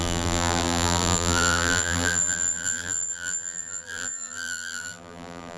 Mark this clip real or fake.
fake